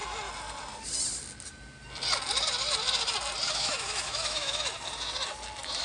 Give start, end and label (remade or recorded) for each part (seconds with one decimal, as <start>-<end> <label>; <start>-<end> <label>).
0.0-3.5 recorded; 3.5-4.7 remade; 4.7-5.8 recorded